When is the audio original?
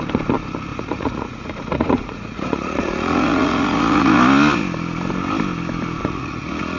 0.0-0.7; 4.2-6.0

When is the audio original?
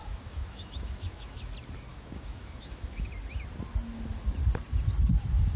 1.5-1.9; 3.1-5.6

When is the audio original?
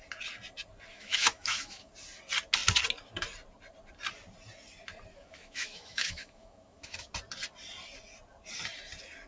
0.0-0.9; 1.9-5.1; 7.1-9.3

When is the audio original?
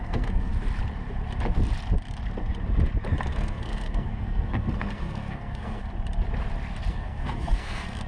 0.5-3.3; 5.8-6.9